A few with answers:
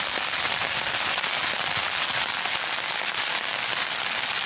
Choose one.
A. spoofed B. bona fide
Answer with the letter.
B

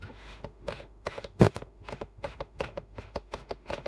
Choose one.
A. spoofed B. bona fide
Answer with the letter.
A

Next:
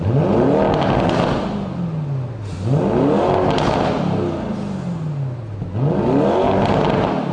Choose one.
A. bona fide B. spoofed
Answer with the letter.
A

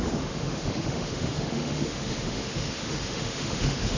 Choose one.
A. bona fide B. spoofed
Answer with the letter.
B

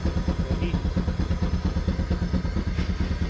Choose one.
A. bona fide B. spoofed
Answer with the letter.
A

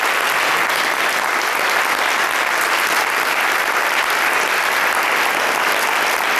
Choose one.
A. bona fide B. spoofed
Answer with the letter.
A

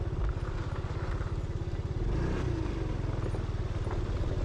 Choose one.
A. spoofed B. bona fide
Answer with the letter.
B